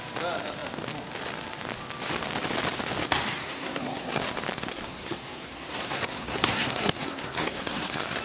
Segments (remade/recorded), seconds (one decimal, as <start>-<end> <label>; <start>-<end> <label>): 0.0-3.4 recorded; 3.4-4.2 remade; 4.2-4.7 recorded; 4.7-8.2 remade